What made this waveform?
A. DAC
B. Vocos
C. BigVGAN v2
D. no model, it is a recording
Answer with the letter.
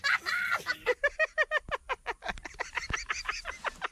D